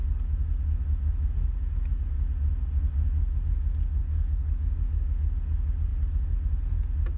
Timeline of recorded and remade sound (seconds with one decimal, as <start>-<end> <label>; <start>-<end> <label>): 0.0-4.0 recorded; 4.0-5.4 remade; 5.4-7.2 recorded